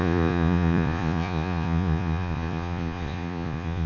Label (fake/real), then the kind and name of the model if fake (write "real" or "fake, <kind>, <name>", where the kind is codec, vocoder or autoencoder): fake, vocoder, Vocos